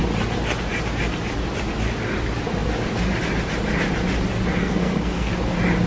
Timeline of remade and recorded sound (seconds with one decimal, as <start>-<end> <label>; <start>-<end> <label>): 0.0-4.6 recorded; 4.6-5.3 remade; 5.3-5.9 recorded